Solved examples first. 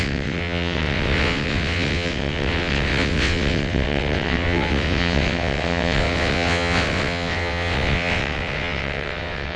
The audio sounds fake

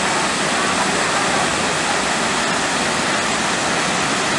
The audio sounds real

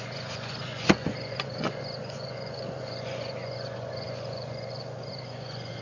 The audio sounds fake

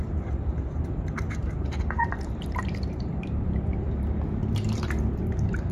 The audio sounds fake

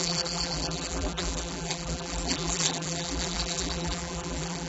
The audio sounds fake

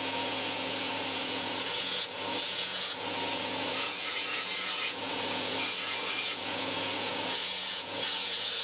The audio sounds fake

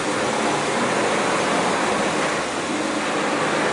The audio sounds real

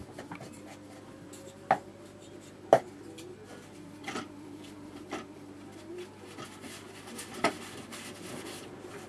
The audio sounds real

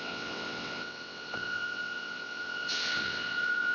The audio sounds fake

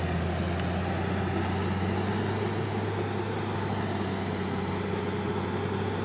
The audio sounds real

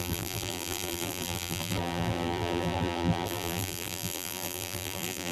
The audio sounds fake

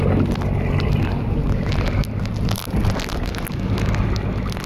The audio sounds real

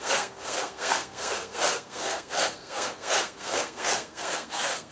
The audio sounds fake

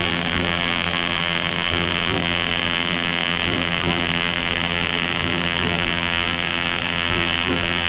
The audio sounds fake